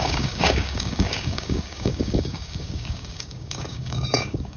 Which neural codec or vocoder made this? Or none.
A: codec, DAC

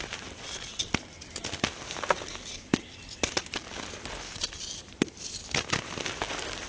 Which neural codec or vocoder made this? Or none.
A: none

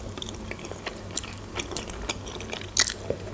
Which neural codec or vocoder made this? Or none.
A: none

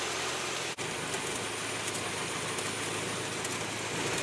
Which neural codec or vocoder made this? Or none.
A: none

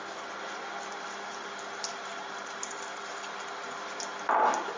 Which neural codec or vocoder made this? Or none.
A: none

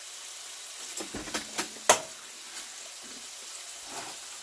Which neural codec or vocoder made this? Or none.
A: none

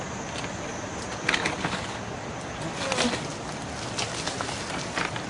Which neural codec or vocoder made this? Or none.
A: none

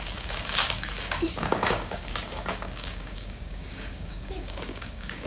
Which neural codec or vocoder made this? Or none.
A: codec, DAC